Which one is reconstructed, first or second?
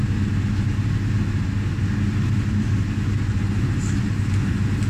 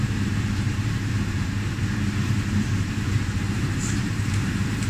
second